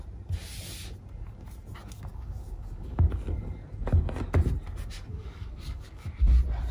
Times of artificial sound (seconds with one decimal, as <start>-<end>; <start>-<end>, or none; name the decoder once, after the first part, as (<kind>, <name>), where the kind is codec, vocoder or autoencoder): 2.1-3.1 (codec, DAC); 5.1-6.1